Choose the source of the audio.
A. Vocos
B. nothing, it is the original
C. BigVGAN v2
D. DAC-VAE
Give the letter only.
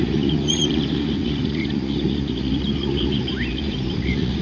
A